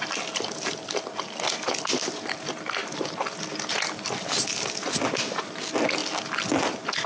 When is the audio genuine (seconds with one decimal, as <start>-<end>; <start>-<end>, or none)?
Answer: 0.0-7.1